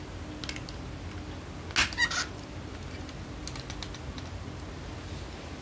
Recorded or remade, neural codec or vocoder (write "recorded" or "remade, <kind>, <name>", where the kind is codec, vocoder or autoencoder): recorded